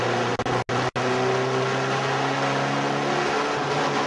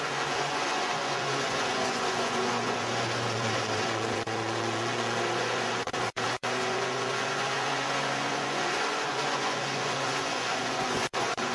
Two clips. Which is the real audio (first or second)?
first